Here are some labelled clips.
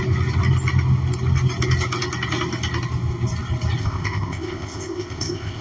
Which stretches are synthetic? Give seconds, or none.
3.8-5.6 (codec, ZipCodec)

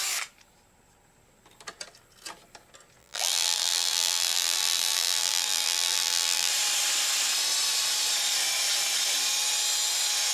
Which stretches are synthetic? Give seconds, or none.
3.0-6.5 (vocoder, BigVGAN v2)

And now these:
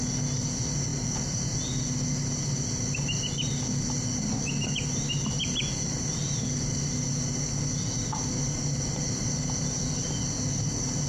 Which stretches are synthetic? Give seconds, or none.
none

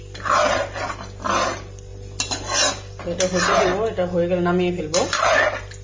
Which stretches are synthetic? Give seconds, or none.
none